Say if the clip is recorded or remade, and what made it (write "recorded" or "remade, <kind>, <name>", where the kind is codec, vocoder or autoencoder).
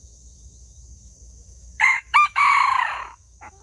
remade, autoencoder, DAC-VAE